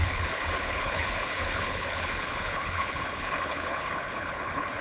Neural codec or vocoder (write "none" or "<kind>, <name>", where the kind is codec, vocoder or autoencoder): codec, HILCodec